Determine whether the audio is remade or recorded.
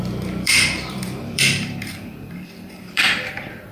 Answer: remade